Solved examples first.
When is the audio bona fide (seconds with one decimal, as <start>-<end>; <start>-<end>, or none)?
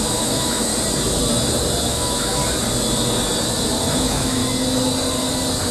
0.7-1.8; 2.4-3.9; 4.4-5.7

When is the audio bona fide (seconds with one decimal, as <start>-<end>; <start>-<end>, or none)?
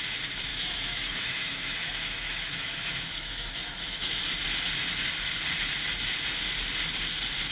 0.0-0.5; 4.2-7.5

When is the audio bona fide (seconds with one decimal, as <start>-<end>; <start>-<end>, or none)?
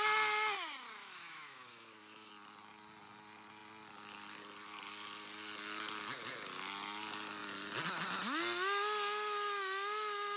0.0-1.0; 2.3-10.4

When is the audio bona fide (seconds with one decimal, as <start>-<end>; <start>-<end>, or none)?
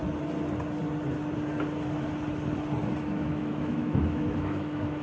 0.0-3.0